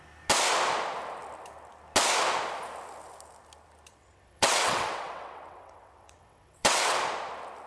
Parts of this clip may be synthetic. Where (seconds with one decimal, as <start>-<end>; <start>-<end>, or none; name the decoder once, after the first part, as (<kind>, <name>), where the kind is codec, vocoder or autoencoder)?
3.9-7.0 (vocoder, WaveNeXt)